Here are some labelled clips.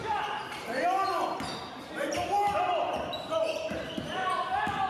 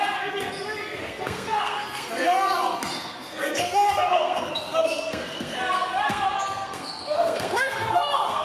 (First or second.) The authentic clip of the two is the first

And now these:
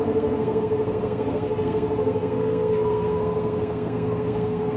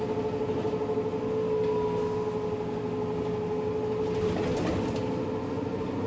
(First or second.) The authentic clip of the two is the second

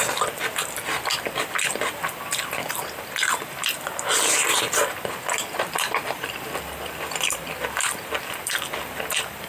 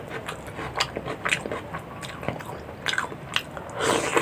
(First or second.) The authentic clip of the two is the second